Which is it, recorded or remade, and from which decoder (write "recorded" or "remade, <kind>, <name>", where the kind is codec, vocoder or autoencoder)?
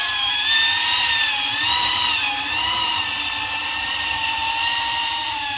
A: remade, vocoder, BigVGAN v2